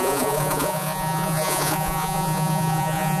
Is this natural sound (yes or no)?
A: no